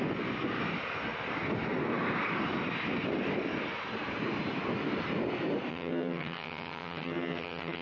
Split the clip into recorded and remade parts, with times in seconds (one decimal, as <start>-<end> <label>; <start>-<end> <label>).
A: 0.0-5.7 recorded; 5.7-7.8 remade